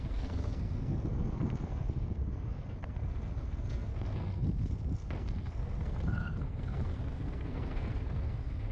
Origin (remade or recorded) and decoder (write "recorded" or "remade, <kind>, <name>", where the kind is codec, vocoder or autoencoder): remade, codec, SNAC